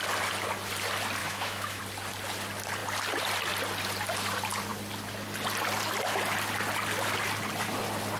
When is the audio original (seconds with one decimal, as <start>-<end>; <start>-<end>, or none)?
0.0-1.2; 1.8-8.2